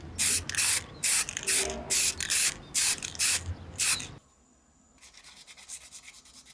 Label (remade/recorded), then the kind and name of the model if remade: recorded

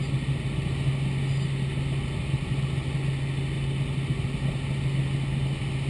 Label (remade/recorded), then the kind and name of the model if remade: recorded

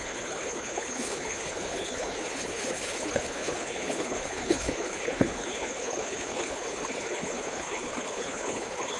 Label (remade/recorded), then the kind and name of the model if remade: remade, codec, HILCodec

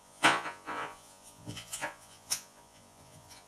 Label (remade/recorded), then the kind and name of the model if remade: remade, vocoder, Vocos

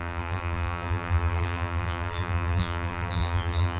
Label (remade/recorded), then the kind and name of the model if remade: remade, vocoder, BigVGAN v2